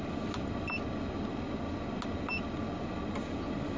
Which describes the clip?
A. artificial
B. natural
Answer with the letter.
B